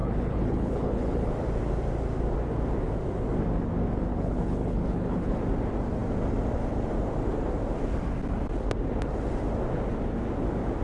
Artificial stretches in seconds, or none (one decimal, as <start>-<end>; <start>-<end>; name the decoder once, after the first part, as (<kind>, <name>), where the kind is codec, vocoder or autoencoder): 0.0-1.3 (codec, HILCodec); 4.1-5.4